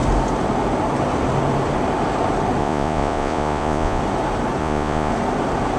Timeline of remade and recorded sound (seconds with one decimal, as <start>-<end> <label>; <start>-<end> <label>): 0.0-2.6 recorded; 2.6-4.0 remade; 4.0-4.6 recorded; 4.6-5.1 remade; 5.1-5.8 recorded